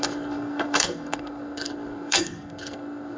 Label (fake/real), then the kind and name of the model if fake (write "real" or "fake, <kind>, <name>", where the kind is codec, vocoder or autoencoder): fake, codec, SNAC